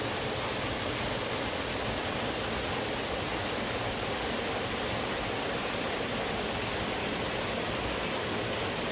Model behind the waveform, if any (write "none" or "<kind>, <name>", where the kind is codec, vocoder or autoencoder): none